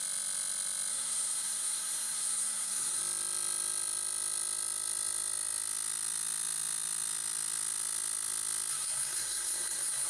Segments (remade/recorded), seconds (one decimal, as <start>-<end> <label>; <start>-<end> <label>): 0.0-0.9 recorded; 0.9-3.0 remade; 3.0-8.7 recorded; 8.7-10.1 remade